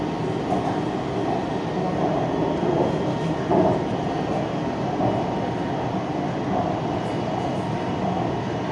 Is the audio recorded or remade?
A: recorded